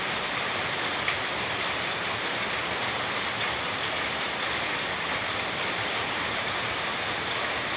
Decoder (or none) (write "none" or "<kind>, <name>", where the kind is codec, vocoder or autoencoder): none